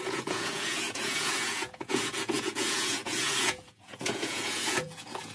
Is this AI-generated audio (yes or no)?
yes